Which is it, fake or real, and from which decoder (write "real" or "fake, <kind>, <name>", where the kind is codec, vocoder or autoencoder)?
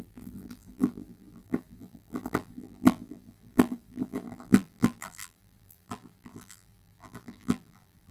fake, vocoder, BigVGAN v2